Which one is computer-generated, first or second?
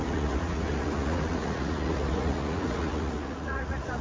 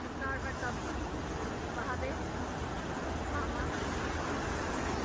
first